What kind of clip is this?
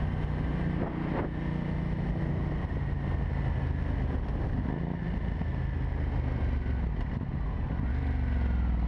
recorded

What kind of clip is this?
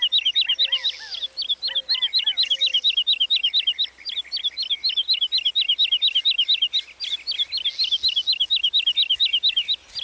recorded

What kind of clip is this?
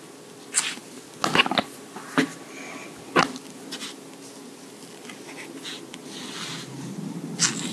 recorded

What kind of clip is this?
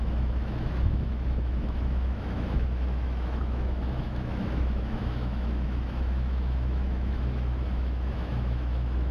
remade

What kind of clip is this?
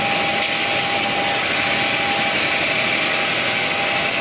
recorded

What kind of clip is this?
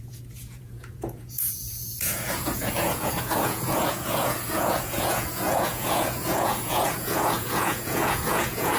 remade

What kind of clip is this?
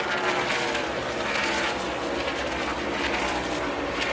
recorded